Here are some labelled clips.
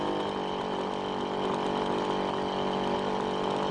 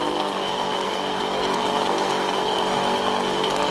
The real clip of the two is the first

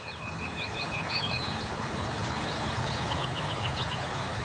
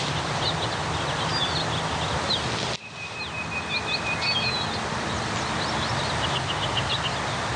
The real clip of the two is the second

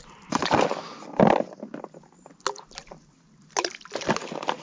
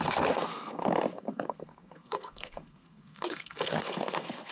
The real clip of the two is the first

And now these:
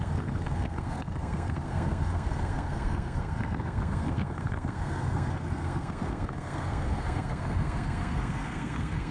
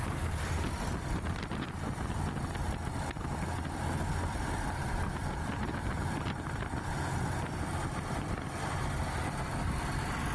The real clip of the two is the second